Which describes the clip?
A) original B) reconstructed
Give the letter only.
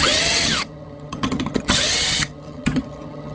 B